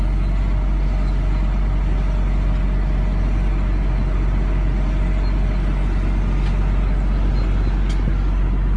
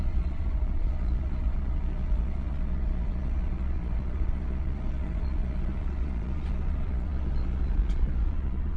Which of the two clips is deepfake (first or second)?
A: second